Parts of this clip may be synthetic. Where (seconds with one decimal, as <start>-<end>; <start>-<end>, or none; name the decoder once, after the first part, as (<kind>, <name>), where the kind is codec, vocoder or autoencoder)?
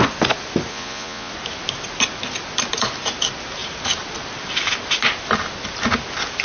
0.7-1.3 (vocoder, Vocos)